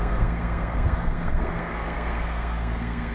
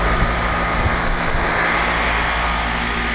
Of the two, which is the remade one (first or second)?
first